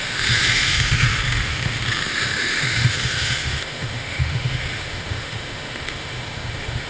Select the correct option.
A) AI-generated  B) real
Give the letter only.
A